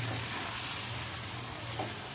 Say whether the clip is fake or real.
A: real